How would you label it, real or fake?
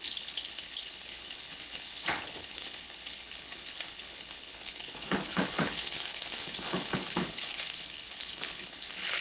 fake